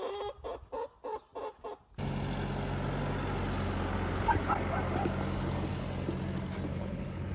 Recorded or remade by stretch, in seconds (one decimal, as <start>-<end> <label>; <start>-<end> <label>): 0.0-6.7 recorded; 6.7-7.3 remade